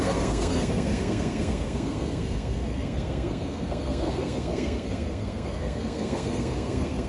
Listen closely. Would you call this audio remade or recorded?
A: remade